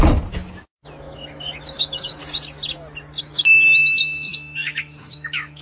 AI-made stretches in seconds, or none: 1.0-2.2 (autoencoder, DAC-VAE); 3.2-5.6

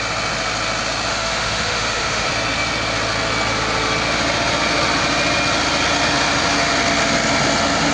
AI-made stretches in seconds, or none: 1.1-2.3 (autoencoder, DAC-VAE)

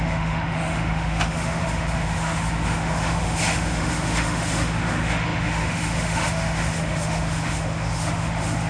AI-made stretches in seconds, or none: 0.0-8.7 (autoencoder, DAC-VAE)

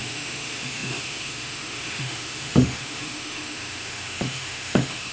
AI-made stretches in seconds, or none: 0.0-5.1 (autoencoder, DAC-VAE)

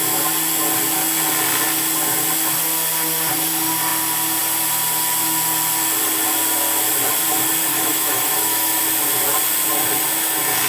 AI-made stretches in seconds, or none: 7.7-8.8 (autoencoder, DAC-VAE)